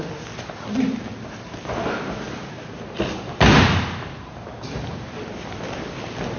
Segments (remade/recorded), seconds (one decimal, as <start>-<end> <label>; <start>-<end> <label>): 0.0-6.4 recorded